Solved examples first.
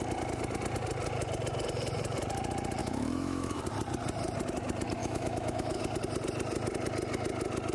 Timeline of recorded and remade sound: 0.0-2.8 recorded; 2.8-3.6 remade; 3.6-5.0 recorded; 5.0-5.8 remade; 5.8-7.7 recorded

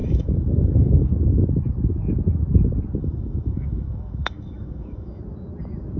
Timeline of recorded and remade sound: 0.0-1.1 remade; 1.1-3.0 recorded; 3.0-5.2 remade; 5.2-6.0 recorded

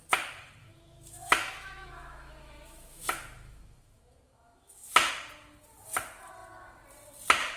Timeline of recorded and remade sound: 0.0-0.6 recorded; 0.6-5.1 remade; 5.1-7.6 recorded

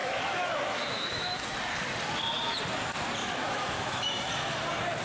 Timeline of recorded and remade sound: 0.0-1.6 remade; 1.6-3.2 recorded; 3.2-4.3 remade; 4.3-5.0 recorded